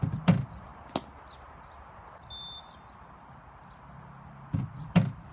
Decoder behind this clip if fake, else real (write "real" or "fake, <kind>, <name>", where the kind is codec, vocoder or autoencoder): real